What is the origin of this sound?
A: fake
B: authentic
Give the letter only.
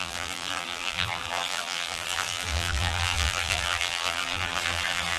A